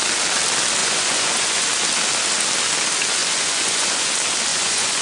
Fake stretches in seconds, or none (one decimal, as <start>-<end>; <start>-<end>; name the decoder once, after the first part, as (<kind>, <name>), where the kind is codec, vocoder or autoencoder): 0.8-1.6 (vocoder, Vocos); 3.2-4.1; 4.5-5.0